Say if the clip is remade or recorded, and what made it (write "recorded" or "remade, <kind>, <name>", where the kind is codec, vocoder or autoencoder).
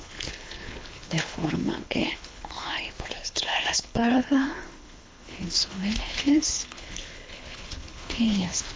remade, codec, HILCodec